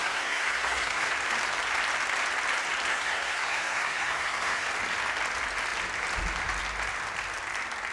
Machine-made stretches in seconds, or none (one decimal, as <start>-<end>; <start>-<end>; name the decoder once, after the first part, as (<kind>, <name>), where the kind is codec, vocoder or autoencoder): 0.0-1.1 (codec, SNAC); 2.9-4.7